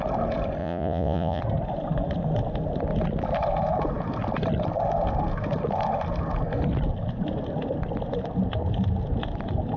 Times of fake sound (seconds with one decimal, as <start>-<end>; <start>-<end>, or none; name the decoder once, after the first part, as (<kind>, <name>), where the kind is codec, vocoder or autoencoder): 0.6-1.4 (vocoder, Vocos)